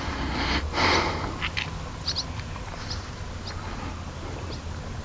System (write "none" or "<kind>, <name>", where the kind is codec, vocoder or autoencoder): none